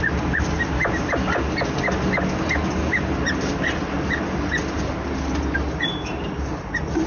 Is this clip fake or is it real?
real